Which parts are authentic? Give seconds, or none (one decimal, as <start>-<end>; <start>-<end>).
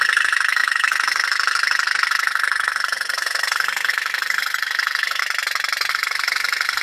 5.2-5.9